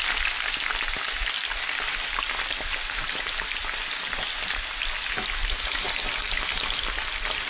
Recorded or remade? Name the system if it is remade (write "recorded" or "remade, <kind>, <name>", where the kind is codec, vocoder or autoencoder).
recorded